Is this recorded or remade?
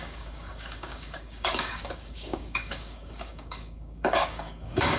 remade